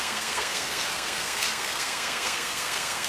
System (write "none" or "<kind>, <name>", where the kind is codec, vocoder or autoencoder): codec, SNAC